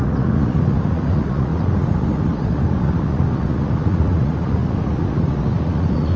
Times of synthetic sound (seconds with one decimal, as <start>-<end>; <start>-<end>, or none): 0.0-6.2